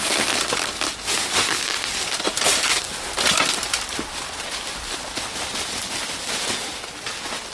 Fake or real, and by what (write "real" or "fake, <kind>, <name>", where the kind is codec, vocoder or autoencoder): real